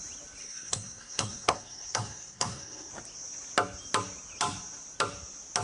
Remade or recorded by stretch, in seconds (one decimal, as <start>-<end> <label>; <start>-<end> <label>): 0.0-0.4 recorded; 0.4-2.9 remade; 2.9-5.6 recorded